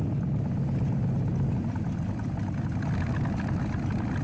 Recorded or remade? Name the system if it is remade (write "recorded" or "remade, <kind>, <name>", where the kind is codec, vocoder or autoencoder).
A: recorded